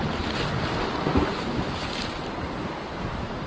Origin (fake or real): real